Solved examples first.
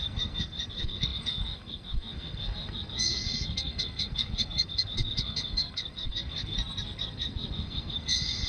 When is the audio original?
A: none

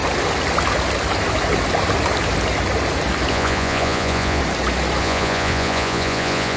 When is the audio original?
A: 0.0-3.3; 4.4-5.0

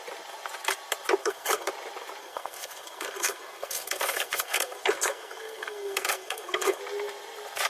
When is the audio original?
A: 0.0-1.2; 1.7-2.2; 6.8-7.7

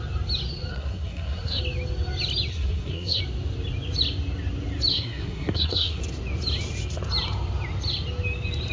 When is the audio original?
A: 0.0-0.7; 1.6-2.5; 3.2-4.9; 6.0-8.7